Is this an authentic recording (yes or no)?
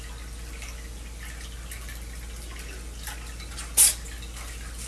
yes